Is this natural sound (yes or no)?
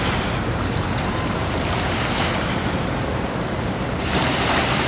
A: no